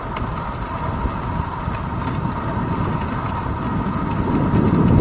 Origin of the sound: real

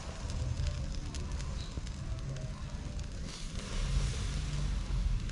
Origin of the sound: real